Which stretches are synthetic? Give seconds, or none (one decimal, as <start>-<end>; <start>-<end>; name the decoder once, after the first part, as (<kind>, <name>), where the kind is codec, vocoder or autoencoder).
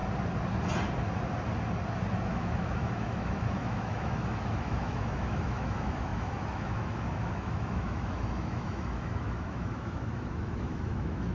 2.3-11.3 (autoencoder, DAC-VAE)